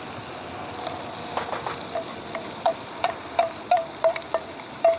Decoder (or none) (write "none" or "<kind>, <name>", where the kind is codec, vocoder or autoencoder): none